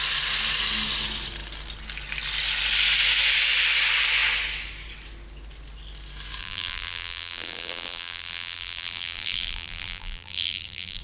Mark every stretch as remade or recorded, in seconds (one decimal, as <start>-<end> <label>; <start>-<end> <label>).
0.0-6.4 recorded; 6.4-11.0 remade